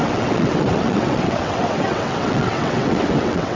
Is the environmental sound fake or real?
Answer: fake